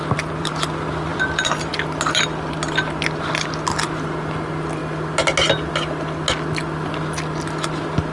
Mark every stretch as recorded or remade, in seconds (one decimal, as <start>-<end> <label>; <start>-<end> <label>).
0.0-0.5 remade; 0.5-1.1 recorded; 1.1-1.7 remade; 1.7-8.1 recorded